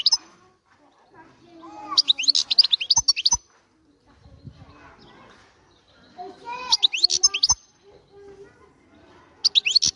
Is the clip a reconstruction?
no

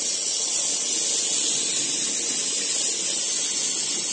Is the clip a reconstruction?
no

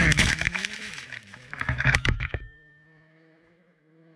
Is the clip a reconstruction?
yes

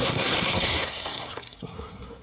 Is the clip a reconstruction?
yes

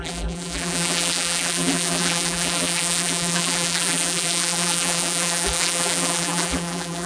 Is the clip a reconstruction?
yes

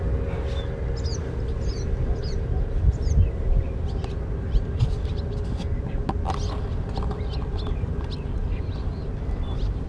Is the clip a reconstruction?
no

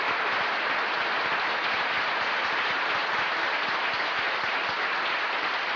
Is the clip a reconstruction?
no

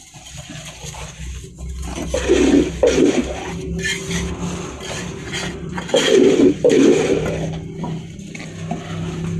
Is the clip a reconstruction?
no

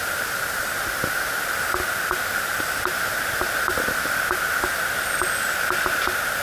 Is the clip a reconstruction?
no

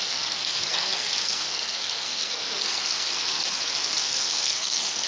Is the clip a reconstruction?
yes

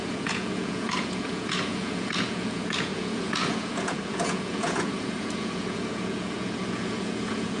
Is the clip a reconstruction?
yes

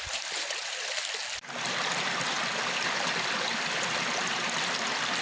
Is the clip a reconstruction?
no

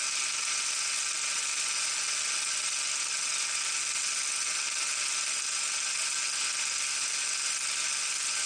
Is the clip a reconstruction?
no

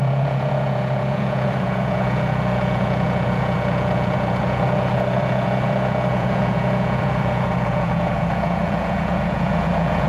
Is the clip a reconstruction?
yes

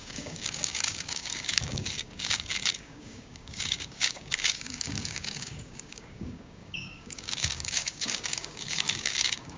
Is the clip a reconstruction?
yes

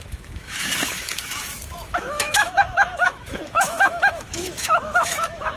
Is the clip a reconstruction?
yes